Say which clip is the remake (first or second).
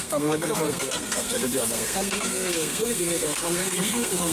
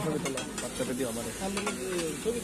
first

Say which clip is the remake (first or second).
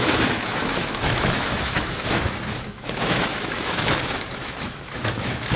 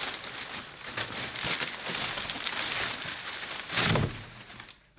first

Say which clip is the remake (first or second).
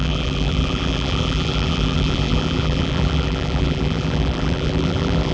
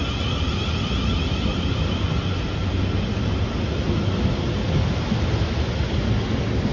first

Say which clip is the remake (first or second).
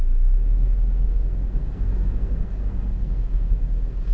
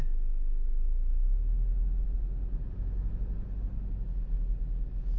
first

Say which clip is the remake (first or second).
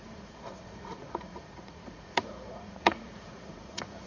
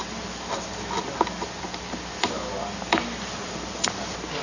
first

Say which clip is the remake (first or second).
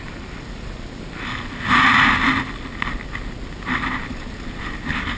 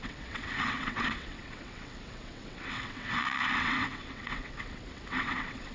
second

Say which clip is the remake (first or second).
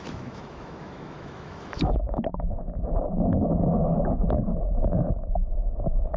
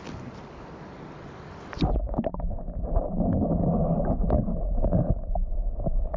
first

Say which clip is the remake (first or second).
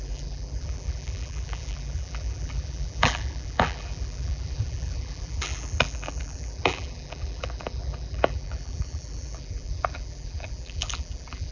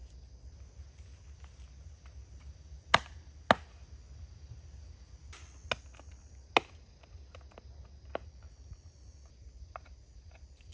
first